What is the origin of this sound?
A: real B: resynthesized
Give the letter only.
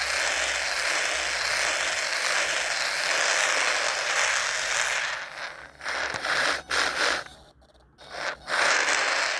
A